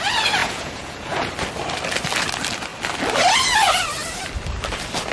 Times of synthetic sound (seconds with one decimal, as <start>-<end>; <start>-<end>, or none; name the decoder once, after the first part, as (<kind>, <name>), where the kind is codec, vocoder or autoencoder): 0.4-1.3 (vocoder, Vocos)